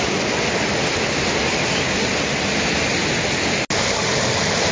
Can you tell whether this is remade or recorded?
recorded